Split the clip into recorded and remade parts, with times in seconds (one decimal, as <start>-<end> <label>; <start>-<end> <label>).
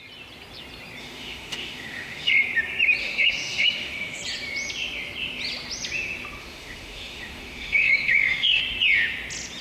0.0-1.0 recorded; 1.0-2.3 remade; 2.3-3.0 recorded; 3.0-4.2 remade; 4.2-6.4 recorded; 6.4-8.6 remade; 8.6-9.6 recorded